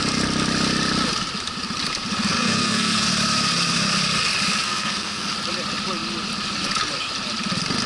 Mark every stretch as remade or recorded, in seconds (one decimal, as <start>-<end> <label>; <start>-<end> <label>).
0.0-2.3 recorded; 2.3-3.1 remade; 3.1-4.6 recorded; 4.6-5.3 remade; 5.3-7.9 recorded